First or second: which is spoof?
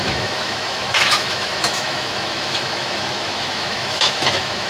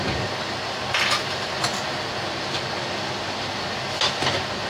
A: first